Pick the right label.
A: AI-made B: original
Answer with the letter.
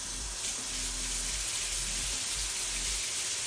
B